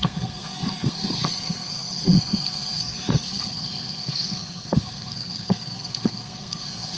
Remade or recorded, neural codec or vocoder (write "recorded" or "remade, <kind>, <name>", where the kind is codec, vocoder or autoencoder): remade, codec, SNAC